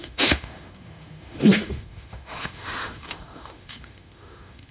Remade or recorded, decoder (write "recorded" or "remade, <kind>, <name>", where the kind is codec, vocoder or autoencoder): remade, autoencoder, DAC-VAE